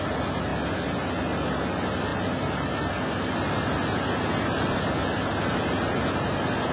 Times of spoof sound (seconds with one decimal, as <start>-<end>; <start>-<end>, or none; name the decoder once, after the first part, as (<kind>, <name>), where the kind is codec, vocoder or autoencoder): none